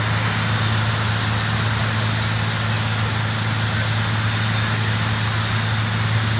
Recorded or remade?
recorded